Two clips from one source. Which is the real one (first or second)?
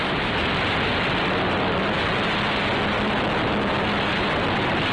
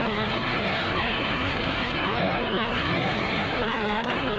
first